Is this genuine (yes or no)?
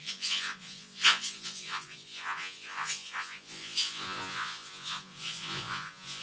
no